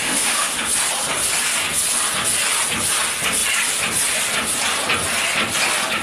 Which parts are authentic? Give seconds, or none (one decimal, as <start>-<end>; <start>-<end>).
0.7-6.0